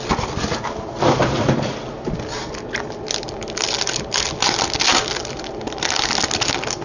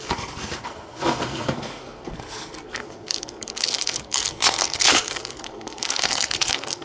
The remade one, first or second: second